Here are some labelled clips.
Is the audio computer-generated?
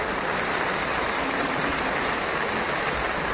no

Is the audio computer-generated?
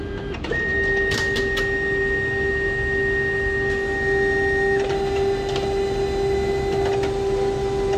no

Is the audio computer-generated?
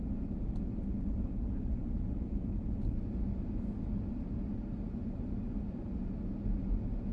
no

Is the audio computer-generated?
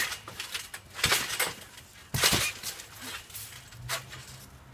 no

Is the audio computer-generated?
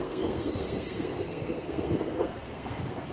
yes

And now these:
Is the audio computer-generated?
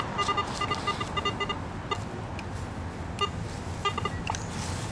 no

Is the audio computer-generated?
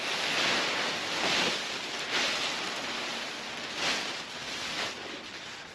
no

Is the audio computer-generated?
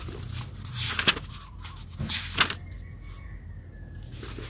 no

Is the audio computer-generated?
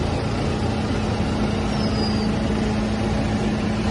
no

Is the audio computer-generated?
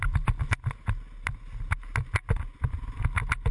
no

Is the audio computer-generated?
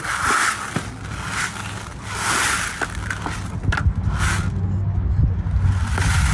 no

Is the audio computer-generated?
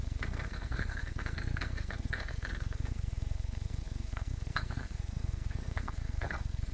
yes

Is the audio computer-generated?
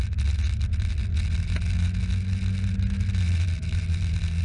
no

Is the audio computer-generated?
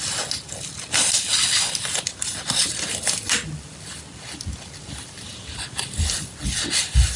no